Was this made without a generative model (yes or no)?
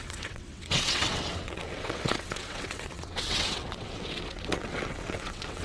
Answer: no